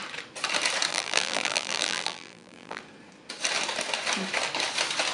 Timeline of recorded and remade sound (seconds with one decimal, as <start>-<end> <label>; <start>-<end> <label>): 0.0-0.9 recorded; 0.9-2.8 remade; 2.8-5.1 recorded